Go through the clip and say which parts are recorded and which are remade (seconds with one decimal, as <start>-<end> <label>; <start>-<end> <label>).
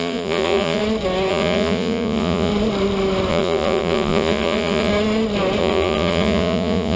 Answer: 0.0-0.8 remade; 0.8-1.3 recorded; 1.3-2.5 remade; 2.5-3.3 recorded; 3.3-4.9 remade; 4.9-5.6 recorded; 5.6-7.0 remade